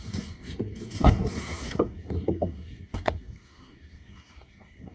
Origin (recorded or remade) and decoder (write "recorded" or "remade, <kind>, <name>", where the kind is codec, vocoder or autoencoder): remade, codec, SNAC